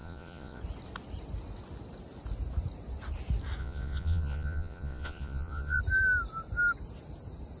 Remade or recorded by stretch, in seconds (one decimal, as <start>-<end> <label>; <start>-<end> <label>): 0.0-0.6 remade; 0.6-3.6 recorded; 3.6-5.8 remade; 5.8-7.6 recorded